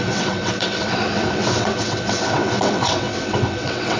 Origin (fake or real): fake